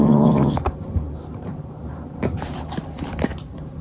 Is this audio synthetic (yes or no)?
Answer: no